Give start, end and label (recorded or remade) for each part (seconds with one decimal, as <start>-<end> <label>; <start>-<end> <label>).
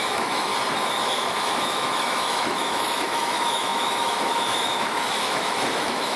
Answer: 0.0-0.5 remade; 0.5-1.0 recorded; 1.0-6.2 remade